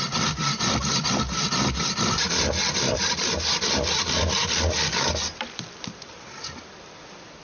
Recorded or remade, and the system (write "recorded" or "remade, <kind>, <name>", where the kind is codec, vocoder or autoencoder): remade, vocoder, BigVGAN v2